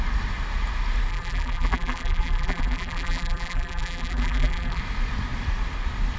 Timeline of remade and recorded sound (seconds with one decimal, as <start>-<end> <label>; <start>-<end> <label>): 0.0-1.1 recorded; 1.1-4.8 remade; 4.8-6.2 recorded